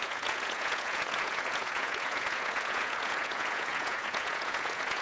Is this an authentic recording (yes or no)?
no